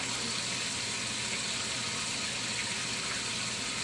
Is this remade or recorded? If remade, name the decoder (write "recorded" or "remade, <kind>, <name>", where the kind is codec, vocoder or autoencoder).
recorded